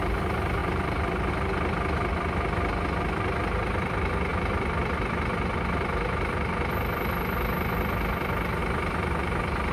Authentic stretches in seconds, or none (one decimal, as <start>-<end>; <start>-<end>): 0.0-0.6; 1.3-9.7